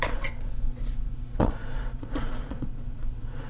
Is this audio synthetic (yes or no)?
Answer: yes